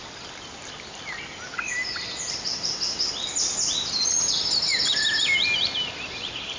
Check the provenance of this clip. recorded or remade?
recorded